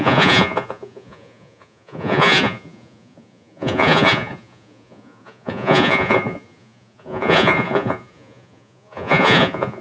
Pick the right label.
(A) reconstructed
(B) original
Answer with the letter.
A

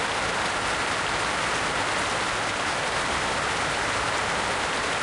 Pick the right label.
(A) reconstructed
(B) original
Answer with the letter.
B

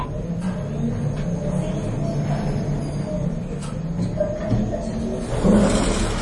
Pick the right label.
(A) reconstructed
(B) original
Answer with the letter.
B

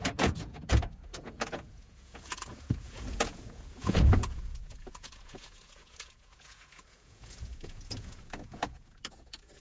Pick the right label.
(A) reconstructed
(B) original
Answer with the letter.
A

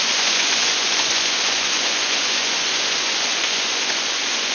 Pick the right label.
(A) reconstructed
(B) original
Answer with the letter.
A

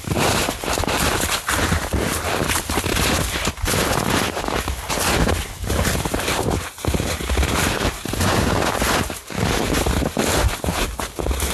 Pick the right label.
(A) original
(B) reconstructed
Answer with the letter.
A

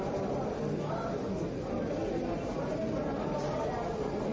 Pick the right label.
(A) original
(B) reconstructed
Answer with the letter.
A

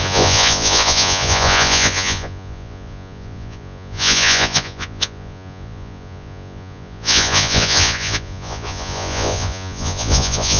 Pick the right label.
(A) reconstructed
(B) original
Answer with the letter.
A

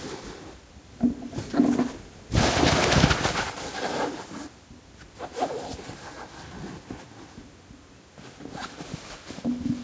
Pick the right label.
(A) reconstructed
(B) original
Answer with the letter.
B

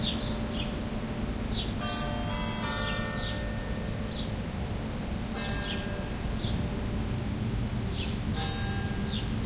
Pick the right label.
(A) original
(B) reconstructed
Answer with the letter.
A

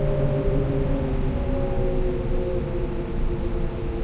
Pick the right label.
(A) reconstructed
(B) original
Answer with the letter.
B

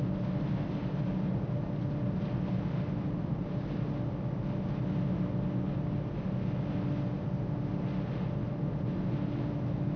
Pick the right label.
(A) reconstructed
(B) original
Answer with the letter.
B